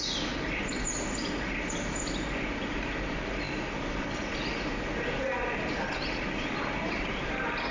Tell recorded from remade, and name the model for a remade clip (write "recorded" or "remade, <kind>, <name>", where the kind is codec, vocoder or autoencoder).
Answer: recorded